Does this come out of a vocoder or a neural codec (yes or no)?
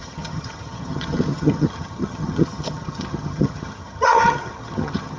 yes